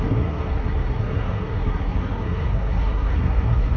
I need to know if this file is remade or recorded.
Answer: remade